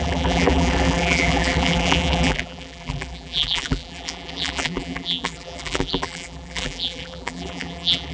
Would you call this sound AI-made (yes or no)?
yes